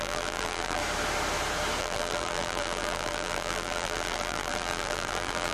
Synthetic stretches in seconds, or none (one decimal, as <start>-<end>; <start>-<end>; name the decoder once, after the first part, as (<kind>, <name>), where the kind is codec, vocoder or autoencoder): 0.0-0.8 (vocoder, BigVGAN v2); 1.8-5.5